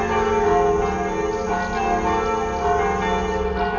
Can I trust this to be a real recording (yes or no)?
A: yes